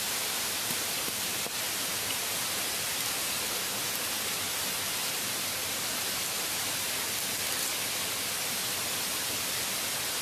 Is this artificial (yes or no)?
no